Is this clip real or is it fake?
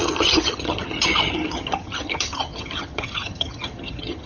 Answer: fake